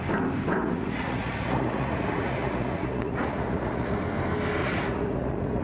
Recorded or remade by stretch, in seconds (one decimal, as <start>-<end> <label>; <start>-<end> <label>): 0.0-0.6 recorded; 0.6-4.0 remade; 4.0-4.6 recorded; 4.6-5.6 remade